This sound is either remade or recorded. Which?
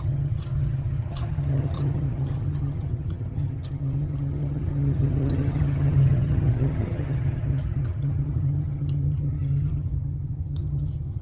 remade